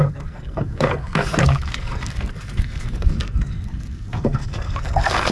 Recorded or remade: remade